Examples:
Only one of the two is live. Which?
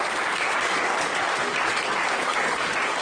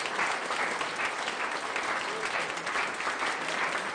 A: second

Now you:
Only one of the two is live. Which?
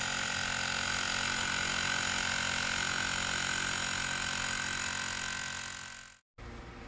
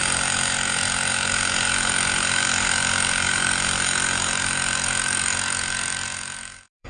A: first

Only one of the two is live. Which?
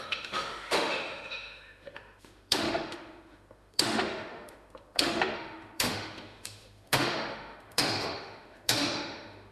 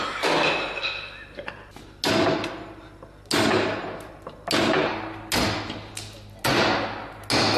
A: second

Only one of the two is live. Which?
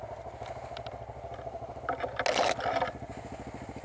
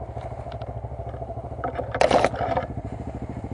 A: first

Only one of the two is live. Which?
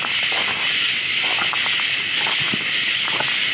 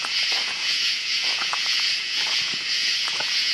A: first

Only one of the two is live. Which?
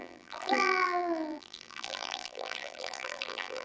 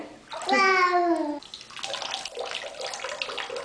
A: second